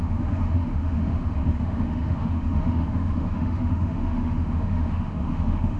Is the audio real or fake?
fake